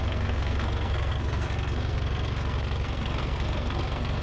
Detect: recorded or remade remade